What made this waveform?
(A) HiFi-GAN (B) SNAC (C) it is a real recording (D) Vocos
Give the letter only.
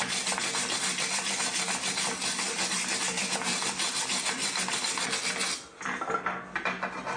C